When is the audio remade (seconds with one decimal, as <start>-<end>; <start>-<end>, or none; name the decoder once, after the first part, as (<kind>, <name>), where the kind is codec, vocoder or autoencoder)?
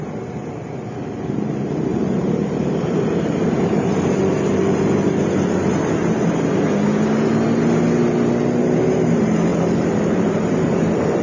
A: 1.9-5.8 (vocoder, BigVGAN v2); 9.5-11.2